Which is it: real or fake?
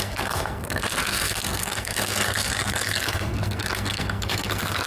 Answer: fake